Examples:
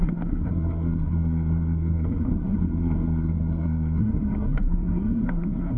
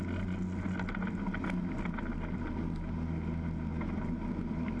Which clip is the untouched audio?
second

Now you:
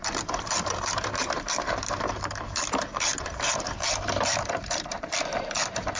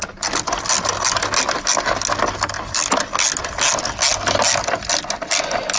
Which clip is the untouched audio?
second